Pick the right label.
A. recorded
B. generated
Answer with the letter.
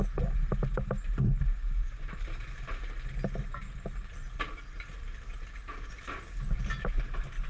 A